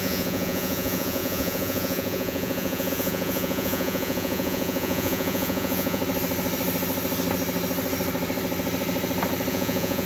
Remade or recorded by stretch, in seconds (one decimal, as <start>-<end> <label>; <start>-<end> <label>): 0.0-6.0 remade; 6.0-9.5 recorded; 9.5-10.1 remade